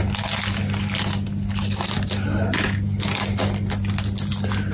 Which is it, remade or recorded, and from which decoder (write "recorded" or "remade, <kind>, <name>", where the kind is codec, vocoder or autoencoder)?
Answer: recorded